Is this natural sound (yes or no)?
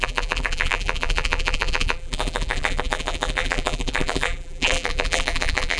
no